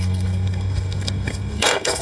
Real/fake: fake